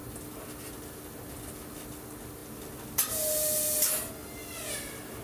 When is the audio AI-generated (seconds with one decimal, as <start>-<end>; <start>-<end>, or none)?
none